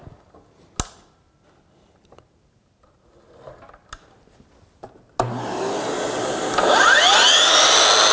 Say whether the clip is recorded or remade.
recorded